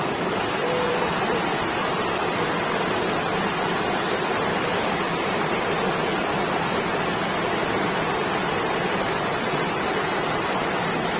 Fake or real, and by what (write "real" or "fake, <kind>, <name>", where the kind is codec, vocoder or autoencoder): real